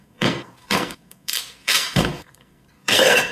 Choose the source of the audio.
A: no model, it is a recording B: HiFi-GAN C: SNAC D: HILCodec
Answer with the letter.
C